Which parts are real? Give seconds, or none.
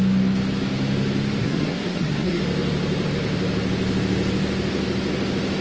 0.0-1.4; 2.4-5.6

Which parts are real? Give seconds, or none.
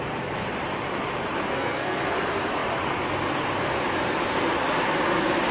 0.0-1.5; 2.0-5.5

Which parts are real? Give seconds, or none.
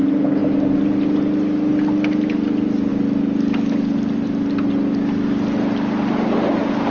0.0-6.9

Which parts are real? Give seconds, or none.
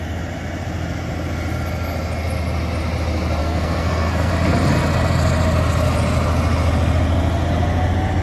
0.0-3.4; 4.3-8.2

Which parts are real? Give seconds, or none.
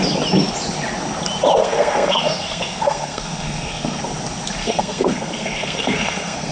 0.0-1.6; 4.0-4.6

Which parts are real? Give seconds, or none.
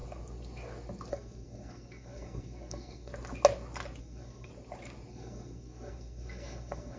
0.0-1.1; 3.1-4.0; 4.5-5.1